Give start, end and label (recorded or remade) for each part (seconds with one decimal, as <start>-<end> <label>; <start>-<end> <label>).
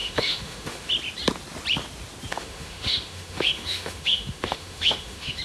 0.0-0.9 remade; 0.9-2.3 recorded; 2.3-5.4 remade